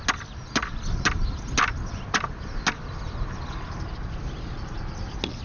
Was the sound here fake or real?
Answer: real